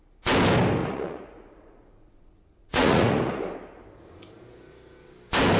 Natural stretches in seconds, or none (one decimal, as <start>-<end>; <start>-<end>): 0.0-0.8; 3.4-5.6